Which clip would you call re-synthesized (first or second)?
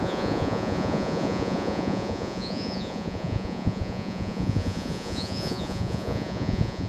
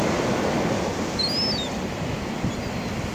first